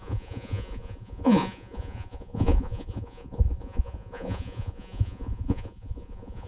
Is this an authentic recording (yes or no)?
no